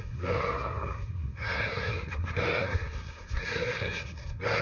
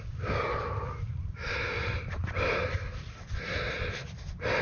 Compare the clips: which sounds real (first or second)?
second